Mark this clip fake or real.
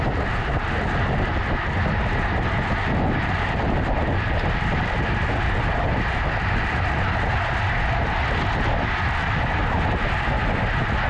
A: real